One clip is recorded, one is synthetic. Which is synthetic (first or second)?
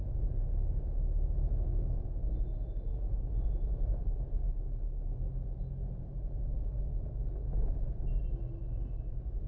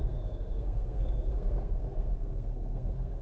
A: second